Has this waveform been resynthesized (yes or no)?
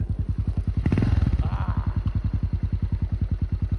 no